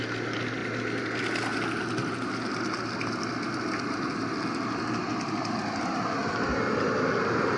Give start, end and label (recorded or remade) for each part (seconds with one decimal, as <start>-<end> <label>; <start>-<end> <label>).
0.0-7.6 recorded